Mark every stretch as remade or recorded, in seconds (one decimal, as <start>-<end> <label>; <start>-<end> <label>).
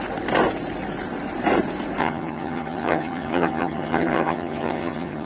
0.0-2.0 recorded; 2.0-5.3 remade